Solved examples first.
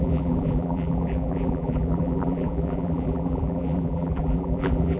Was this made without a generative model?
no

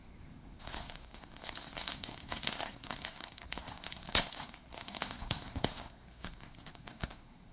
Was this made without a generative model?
no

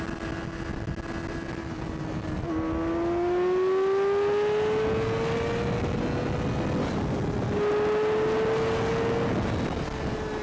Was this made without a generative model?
yes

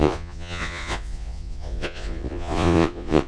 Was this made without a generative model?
no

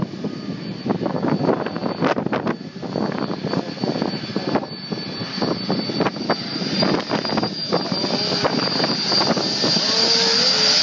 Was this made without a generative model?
yes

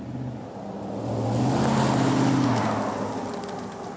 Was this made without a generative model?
yes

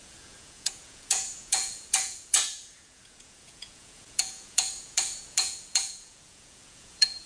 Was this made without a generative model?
no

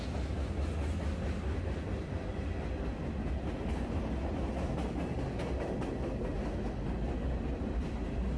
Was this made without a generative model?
yes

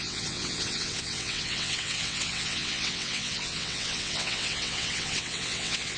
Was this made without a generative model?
no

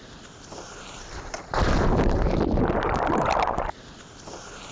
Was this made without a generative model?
yes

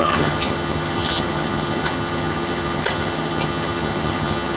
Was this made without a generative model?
no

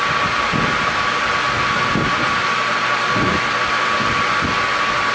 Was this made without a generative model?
yes